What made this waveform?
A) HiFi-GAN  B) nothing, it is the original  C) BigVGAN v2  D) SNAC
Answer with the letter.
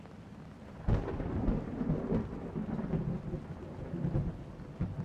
B